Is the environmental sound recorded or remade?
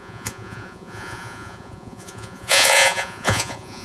remade